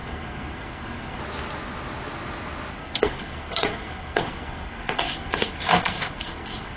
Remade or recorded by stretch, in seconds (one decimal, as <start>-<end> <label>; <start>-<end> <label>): 0.0-1.2 remade; 1.2-2.7 recorded; 2.7-6.8 remade